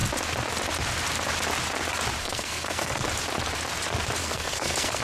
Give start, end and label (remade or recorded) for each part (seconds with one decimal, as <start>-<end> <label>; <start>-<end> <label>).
0.0-2.2 recorded; 2.2-3.1 remade; 3.1-4.2 recorded; 4.2-5.0 remade